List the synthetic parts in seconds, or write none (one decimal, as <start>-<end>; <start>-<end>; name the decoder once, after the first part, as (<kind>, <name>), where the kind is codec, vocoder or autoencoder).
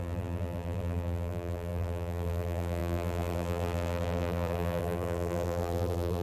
0.0-6.2 (vocoder, BigVGAN v2)